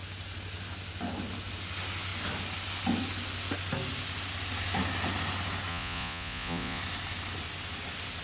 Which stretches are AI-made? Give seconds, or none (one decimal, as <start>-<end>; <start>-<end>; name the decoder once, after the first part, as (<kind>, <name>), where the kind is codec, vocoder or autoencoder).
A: 5.7-6.8 (vocoder, Vocos)